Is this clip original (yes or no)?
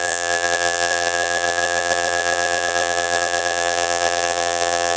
no